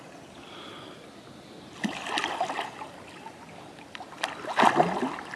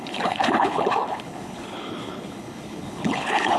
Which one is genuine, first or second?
first